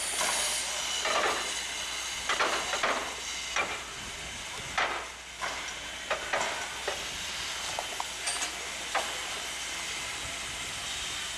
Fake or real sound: real